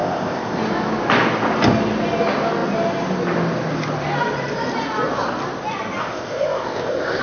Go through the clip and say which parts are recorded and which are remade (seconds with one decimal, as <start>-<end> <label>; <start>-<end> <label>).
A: 0.0-0.6 remade; 0.6-6.0 recorded; 6.0-7.2 remade